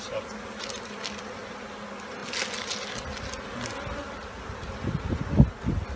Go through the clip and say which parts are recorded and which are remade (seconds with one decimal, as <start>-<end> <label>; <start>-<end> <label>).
0.0-6.0 recorded